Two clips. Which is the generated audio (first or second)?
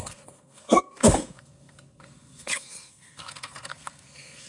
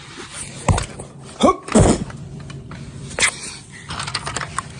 first